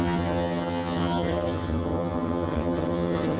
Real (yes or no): no